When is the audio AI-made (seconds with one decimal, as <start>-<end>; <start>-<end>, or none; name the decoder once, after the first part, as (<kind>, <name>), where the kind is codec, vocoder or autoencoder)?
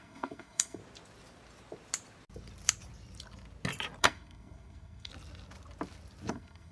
0.0-0.8 (codec, SNAC); 4.0-5.1; 6.3-6.7